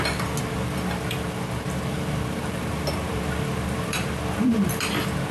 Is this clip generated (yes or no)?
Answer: yes